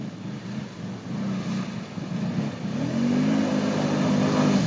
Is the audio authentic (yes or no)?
yes